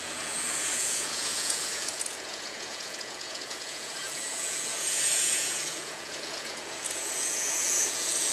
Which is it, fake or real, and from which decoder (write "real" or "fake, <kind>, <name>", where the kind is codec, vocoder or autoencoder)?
fake, vocoder, Vocos